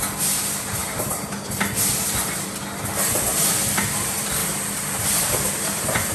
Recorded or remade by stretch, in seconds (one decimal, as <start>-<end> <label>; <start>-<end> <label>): 0.0-0.8 recorded; 0.8-1.3 remade; 1.3-4.4 recorded; 4.4-5.3 remade; 5.3-6.1 recorded